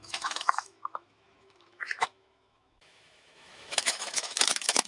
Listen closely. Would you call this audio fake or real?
fake